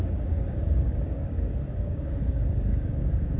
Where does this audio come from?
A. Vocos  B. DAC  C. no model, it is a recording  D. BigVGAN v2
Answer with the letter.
B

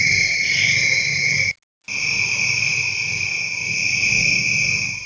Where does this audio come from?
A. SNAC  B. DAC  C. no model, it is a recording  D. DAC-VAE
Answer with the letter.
C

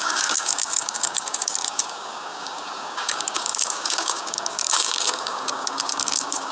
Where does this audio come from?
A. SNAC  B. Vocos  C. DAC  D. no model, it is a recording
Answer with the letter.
C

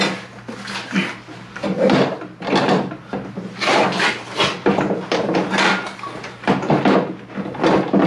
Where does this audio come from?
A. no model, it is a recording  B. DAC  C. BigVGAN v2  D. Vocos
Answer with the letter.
A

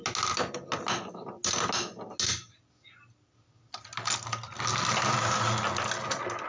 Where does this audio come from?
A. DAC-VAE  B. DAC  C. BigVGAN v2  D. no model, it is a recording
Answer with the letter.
D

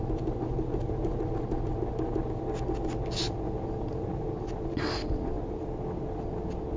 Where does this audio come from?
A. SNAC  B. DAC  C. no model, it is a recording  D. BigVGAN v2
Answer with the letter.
C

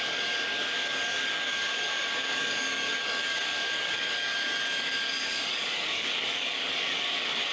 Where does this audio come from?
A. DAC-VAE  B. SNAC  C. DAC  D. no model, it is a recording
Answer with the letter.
C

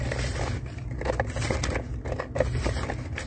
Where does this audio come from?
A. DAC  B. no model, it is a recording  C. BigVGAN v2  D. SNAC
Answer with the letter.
B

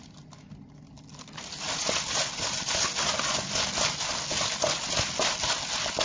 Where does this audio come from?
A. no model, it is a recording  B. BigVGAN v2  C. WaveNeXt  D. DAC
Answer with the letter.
A